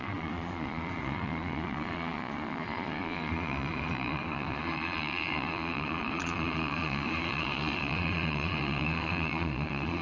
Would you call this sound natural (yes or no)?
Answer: no